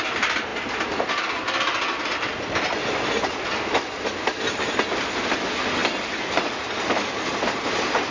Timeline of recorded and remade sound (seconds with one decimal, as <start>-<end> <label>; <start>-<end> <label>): 0.0-8.1 recorded